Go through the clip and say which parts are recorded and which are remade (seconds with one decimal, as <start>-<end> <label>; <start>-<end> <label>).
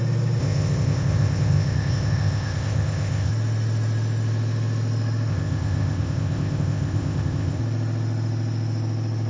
0.0-0.4 recorded; 0.4-3.3 remade; 3.3-5.3 recorded; 5.3-7.6 remade; 7.6-9.3 recorded